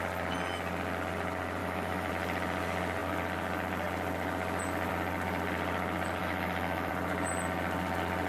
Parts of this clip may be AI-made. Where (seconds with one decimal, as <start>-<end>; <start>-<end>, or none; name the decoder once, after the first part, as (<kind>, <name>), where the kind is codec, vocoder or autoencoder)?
1.6-2.1 (autoencoder, DAC-VAE); 6.2-6.9